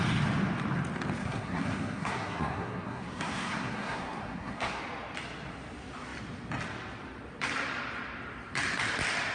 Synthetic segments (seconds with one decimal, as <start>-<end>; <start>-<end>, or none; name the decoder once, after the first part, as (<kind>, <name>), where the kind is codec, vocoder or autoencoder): 1.2-4.8 (codec, SNAC)